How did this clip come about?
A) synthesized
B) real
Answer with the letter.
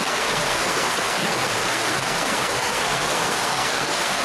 A